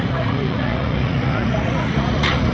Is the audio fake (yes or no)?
yes